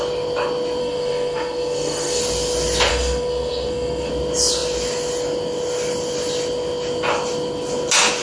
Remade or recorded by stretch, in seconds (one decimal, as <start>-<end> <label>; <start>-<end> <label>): 0.0-0.8 recorded; 0.8-2.2 remade; 2.2-2.9 recorded; 2.9-4.1 remade; 4.1-8.2 recorded